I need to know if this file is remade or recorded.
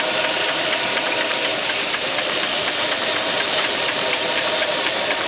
remade